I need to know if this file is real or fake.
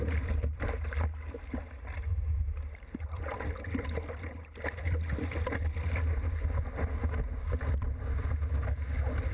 real